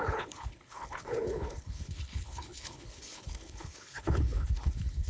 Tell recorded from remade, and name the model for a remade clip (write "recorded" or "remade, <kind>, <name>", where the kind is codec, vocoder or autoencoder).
remade, codec, HILCodec